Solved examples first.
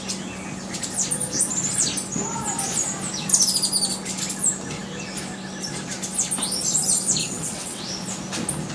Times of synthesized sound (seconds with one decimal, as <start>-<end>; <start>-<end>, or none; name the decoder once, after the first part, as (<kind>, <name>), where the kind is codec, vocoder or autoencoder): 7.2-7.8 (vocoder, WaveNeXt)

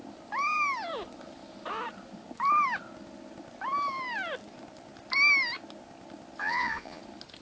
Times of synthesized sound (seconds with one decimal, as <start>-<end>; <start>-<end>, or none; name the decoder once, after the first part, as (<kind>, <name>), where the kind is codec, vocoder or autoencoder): 6.4-7.0 (vocoder, Vocos)

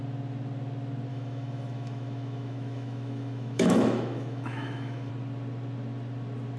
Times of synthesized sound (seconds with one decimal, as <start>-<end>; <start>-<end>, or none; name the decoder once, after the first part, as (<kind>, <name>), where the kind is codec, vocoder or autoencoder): 1.1-5.1 (autoencoder, DAC-VAE)

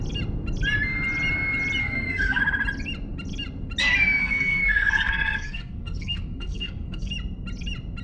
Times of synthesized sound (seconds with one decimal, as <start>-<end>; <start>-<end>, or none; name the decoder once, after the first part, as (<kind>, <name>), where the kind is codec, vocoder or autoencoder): 1.8-2.4 (codec, SNAC); 4.2-7.1

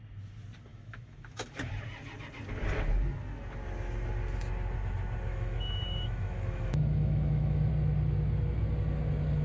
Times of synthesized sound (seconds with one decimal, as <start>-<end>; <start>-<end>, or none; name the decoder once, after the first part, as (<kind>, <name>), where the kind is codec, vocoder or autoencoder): 0.7-1.7 (autoencoder, DAC-VAE); 5.3-7.7

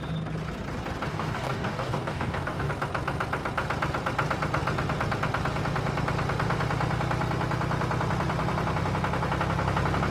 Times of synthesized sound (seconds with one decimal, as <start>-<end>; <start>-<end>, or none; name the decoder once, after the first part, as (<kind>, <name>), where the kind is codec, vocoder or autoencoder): 1.1-2.7 (codec, DAC)

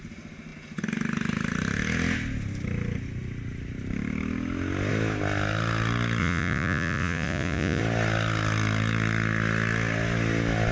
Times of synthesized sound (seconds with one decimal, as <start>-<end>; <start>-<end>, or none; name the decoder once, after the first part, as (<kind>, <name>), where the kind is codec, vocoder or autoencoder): 6.2-7.8 (vocoder, Vocos)

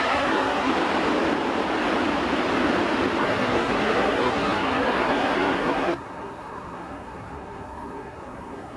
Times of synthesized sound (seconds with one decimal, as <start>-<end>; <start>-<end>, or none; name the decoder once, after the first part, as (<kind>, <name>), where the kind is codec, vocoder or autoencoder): 0.0-0.7 (codec, SNAC); 3.2-8.8